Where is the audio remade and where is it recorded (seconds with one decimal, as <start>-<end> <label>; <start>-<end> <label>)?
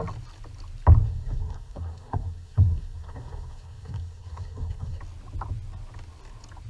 0.0-1.0 recorded; 1.0-5.0 remade; 5.0-6.7 recorded